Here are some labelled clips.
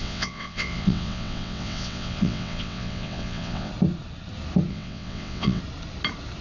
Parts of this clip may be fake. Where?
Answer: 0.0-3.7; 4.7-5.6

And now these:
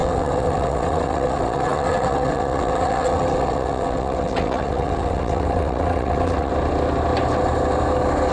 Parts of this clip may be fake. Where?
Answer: 0.0-6.5

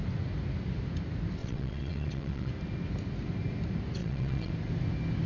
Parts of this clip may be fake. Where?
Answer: 1.4-2.5; 4.0-4.5

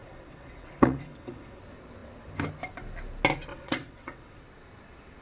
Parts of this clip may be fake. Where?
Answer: 0.0-1.6; 3.5-4.4